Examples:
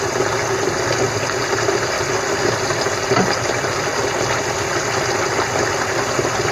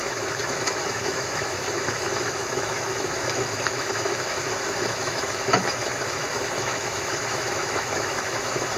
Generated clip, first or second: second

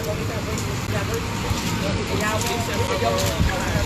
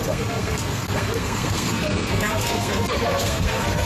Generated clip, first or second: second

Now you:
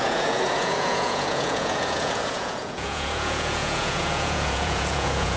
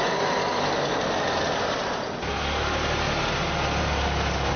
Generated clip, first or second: first